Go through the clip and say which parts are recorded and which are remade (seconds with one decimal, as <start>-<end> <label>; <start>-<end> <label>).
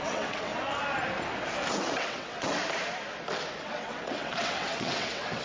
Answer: 0.0-0.5 remade; 0.5-1.7 recorded; 1.7-2.6 remade; 2.6-3.6 recorded; 3.6-5.4 remade